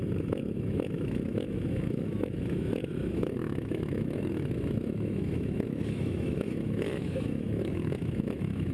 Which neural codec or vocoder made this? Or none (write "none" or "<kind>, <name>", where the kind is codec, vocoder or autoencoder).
autoencoder, DAC-VAE